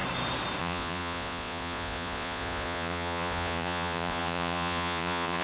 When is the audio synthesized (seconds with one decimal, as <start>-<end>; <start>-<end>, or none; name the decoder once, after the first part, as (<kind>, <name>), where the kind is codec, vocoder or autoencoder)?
0.6-5.4 (vocoder, Vocos)